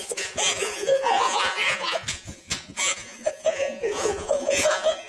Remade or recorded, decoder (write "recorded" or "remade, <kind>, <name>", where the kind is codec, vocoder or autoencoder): remade, vocoder, Vocos